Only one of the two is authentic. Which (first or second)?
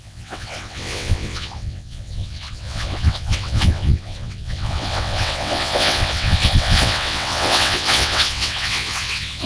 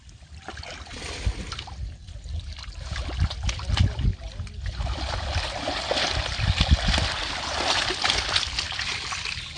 second